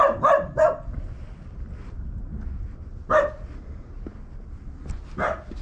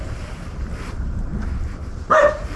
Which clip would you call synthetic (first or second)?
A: second